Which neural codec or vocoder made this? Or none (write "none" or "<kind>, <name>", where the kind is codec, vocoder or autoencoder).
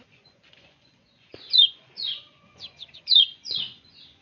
vocoder, Vocos